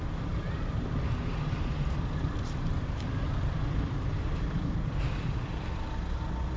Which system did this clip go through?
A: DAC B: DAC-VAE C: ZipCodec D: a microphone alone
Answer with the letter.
D